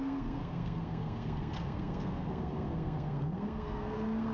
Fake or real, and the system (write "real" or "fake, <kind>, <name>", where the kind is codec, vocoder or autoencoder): fake, codec, SNAC